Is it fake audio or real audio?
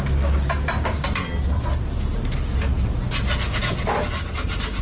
real